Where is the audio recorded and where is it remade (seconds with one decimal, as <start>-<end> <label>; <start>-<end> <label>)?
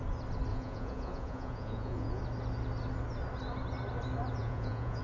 0.0-0.5 recorded; 0.5-2.2 remade; 2.2-4.4 recorded; 4.4-5.0 remade